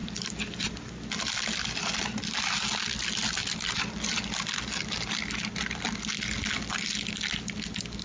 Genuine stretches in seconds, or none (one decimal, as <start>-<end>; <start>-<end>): 0.7-3.4; 6.1-8.0